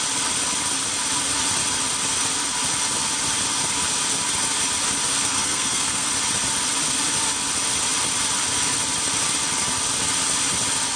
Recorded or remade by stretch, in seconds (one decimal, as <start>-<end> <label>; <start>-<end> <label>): 0.0-5.2 recorded; 5.2-6.1 remade; 6.1-11.0 recorded